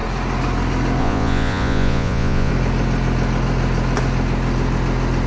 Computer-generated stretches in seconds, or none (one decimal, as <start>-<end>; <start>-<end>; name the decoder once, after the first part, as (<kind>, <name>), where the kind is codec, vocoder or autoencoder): 1.0-2.5 (vocoder, Vocos)